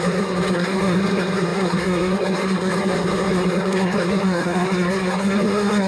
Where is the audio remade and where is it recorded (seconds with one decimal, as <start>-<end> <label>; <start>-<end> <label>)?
0.0-5.9 remade